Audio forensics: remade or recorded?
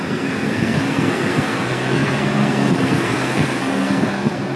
remade